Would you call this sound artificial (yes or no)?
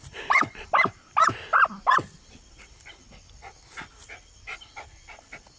no